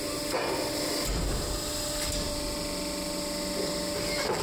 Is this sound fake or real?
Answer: real